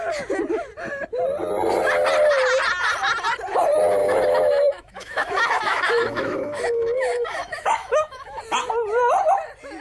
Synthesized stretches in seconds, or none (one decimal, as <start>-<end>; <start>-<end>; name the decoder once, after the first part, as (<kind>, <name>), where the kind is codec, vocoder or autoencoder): 4.0-8.4 (autoencoder, DAC-VAE)